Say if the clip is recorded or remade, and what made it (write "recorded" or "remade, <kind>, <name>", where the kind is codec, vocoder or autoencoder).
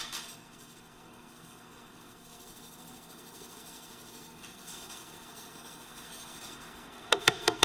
remade, codec, SNAC